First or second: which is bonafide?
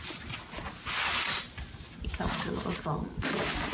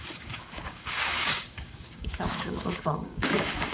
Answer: first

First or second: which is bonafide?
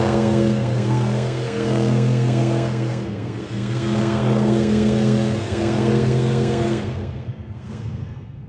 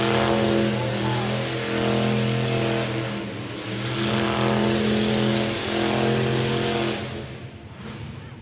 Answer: second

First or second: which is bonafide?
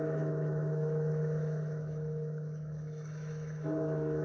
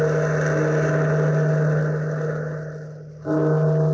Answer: second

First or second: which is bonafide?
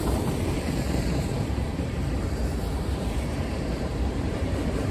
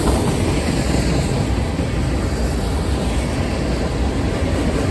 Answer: second